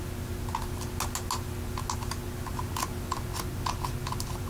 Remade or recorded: recorded